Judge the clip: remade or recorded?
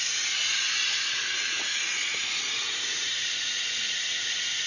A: remade